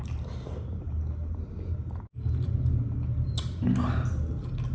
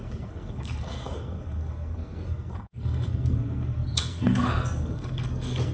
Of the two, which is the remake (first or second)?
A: second